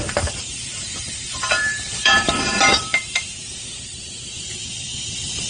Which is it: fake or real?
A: fake